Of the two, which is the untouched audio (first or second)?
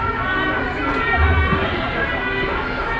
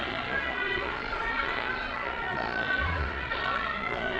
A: first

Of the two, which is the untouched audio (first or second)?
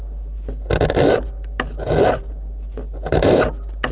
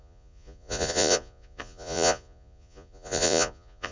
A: first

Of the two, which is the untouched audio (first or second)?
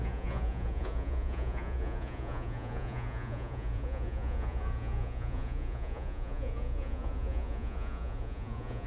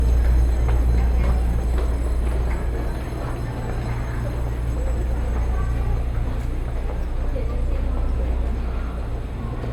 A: second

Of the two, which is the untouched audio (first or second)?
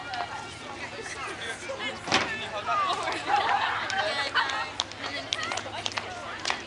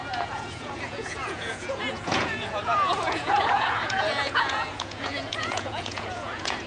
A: first